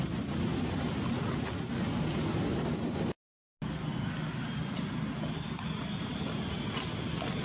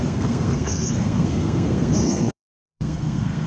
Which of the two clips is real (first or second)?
first